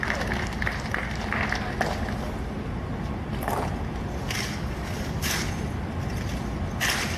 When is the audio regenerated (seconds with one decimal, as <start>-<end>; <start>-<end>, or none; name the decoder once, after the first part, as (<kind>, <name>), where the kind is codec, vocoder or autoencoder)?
4.2-5.5 (codec, DAC)